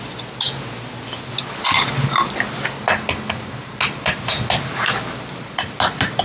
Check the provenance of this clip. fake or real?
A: real